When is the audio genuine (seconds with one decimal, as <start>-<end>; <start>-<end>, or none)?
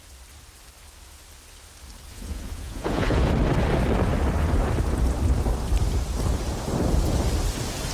0.0-2.1; 3.3-7.9